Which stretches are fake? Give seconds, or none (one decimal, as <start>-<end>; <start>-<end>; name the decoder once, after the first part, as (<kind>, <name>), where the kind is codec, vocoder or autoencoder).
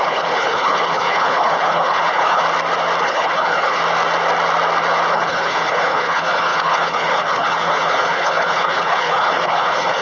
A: 0.0-2.4 (codec, HILCodec); 3.0-3.8; 5.1-10.0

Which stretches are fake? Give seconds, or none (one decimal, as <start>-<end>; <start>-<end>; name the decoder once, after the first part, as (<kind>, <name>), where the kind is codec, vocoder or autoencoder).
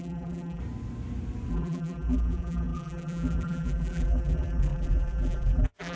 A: 0.0-0.6 (vocoder, BigVGAN v2); 1.5-6.0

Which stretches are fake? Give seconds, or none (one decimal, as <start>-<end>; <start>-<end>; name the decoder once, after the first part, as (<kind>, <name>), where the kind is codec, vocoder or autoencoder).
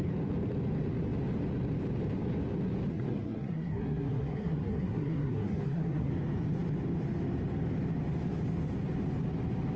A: 2.9-6.1 (codec, SNAC)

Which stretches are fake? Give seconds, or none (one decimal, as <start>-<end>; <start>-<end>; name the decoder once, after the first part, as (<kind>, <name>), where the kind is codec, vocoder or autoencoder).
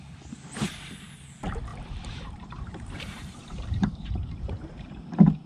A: 1.7-5.0 (vocoder, BigVGAN v2)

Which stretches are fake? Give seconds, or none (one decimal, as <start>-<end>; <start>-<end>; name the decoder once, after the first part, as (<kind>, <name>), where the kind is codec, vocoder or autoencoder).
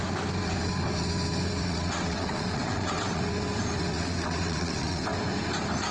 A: 1.6-3.2 (vocoder, WaveNeXt); 3.9-5.1